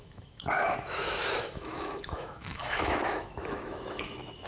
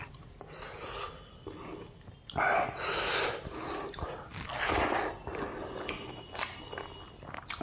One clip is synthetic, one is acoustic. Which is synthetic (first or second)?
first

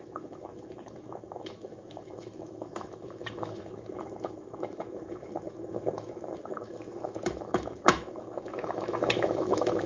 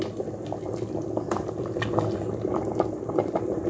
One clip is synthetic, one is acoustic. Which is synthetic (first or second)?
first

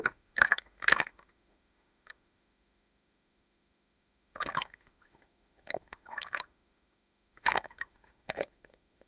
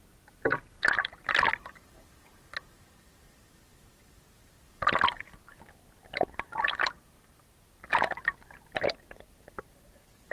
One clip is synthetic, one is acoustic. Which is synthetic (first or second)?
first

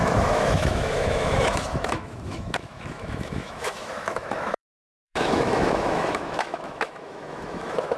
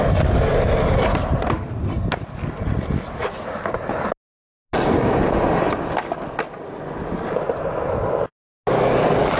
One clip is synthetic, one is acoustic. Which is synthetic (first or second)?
first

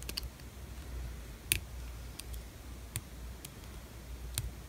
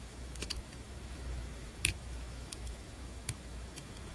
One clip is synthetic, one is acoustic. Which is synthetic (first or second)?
second